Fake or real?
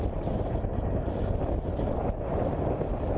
real